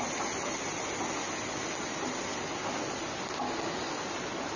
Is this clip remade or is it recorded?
recorded